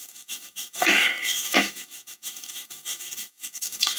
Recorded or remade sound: remade